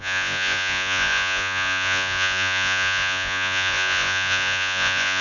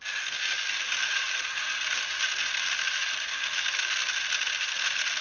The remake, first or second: first